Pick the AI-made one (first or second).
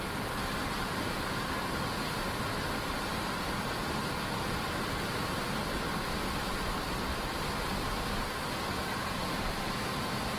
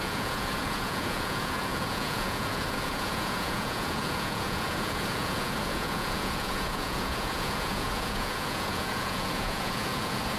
second